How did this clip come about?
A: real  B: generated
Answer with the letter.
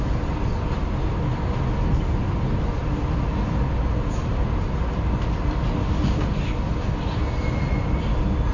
A